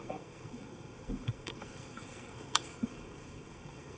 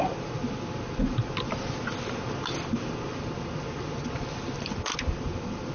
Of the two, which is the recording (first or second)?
second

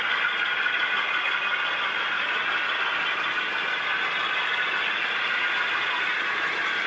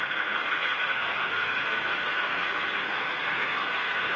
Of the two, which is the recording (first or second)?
first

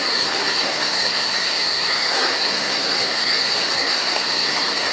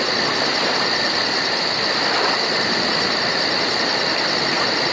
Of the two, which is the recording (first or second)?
second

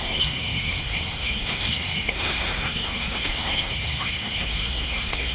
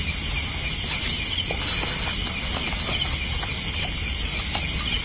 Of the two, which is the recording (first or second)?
second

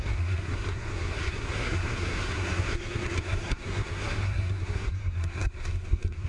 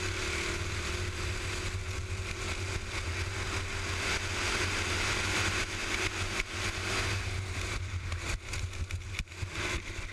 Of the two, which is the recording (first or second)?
second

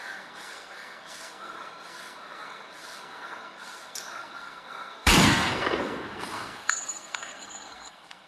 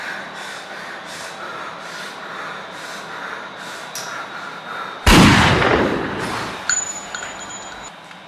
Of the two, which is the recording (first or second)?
second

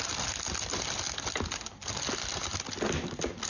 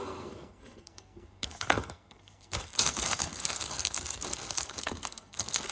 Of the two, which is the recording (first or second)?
first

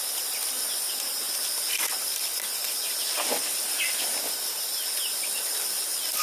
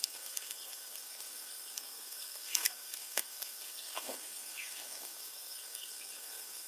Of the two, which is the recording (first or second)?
first